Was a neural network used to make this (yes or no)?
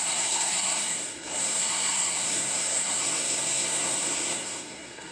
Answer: yes